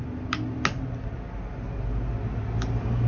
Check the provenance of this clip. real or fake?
real